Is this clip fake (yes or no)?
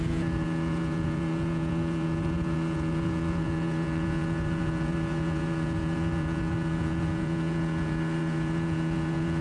yes